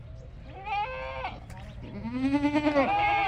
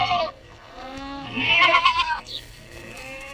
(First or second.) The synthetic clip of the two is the second